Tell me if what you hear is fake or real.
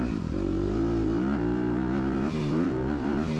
fake